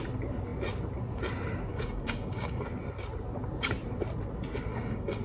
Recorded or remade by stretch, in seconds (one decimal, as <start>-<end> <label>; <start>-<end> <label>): 0.0-1.7 recorded; 1.7-2.6 remade; 2.6-4.7 recorded; 4.7-5.2 remade